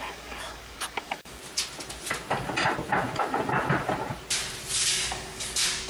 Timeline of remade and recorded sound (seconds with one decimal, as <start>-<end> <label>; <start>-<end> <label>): 0.0-1.4 remade; 1.4-4.9 recorded; 4.9-5.9 remade